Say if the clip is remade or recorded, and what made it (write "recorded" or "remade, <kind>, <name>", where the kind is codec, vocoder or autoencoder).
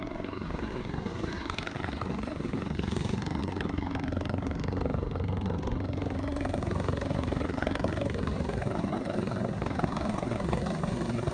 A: remade, codec, SNAC